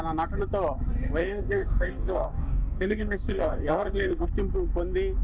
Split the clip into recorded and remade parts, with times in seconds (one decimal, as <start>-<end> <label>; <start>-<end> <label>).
0.0-1.2 recorded; 1.2-4.3 remade; 4.3-5.2 recorded